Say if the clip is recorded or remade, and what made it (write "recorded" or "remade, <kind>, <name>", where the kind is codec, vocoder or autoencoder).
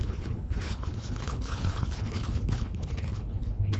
remade, codec, HILCodec